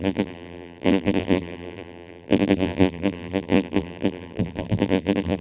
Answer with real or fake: fake